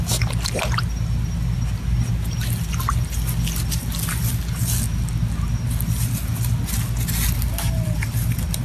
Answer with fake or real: real